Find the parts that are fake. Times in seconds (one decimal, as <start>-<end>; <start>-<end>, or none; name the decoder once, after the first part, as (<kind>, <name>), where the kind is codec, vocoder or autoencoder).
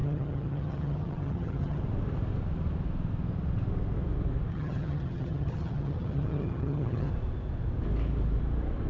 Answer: 0.0-1.8 (vocoder, HiFi-GAN); 4.5-7.1